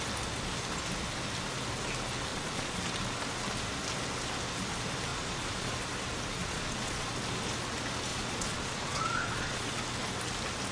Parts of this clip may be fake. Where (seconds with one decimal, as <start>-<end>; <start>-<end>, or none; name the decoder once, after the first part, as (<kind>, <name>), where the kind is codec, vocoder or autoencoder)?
2.3-2.8 (vocoder, Vocos); 5.1-5.7; 6.4-7.1; 8.1-9.8